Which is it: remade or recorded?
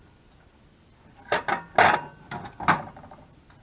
recorded